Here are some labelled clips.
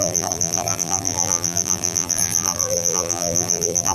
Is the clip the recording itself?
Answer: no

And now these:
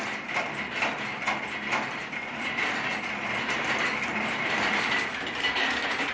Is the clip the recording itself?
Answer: no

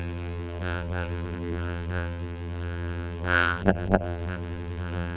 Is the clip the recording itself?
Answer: no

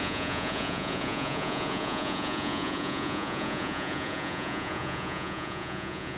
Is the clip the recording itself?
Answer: no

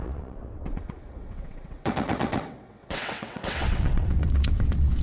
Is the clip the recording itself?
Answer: no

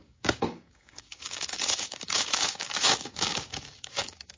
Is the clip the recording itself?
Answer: no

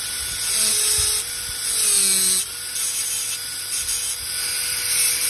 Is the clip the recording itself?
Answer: yes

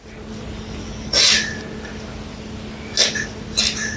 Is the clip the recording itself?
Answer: yes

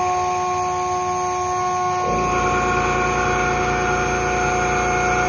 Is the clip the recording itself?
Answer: yes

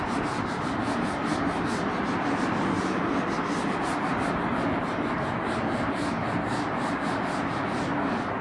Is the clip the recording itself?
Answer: no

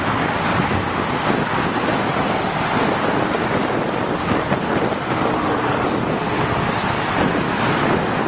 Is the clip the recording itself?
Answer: yes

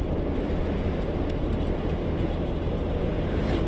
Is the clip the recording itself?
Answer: yes